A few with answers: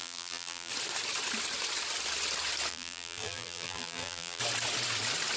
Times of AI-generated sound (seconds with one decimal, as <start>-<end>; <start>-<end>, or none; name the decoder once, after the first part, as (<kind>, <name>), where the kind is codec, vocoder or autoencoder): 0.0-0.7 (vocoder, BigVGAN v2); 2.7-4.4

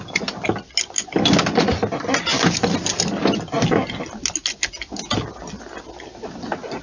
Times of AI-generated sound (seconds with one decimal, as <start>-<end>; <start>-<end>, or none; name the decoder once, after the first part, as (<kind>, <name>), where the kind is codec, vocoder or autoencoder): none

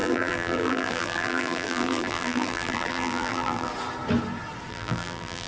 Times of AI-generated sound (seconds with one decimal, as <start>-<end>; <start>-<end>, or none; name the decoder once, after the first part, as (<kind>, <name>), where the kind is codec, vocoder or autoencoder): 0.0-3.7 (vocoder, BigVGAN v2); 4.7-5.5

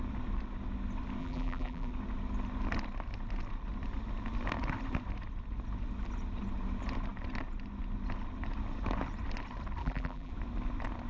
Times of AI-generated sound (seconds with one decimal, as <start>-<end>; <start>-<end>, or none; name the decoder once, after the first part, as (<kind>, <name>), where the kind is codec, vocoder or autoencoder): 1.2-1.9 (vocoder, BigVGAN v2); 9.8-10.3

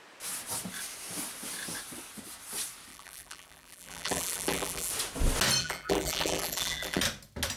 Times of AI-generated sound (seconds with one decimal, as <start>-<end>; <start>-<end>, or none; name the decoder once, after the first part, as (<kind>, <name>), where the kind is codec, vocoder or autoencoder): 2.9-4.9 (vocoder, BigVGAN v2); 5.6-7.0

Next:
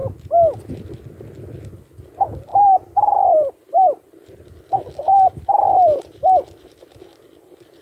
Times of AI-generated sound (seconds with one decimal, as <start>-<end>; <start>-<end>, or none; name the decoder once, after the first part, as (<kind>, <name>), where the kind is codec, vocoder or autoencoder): 2.5-4.3 (vocoder, BigVGAN v2); 5.1-7.3

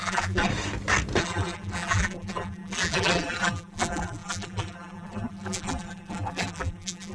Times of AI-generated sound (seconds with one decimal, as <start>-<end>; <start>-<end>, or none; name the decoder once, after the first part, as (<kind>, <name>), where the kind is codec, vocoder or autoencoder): 0.0-0.5 (vocoder, BigVGAN v2); 1.2-7.1